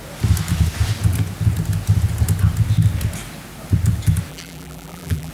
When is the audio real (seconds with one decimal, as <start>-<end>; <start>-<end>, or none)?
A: 0.0-4.3